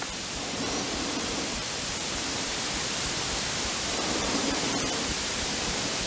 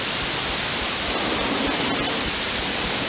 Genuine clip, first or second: second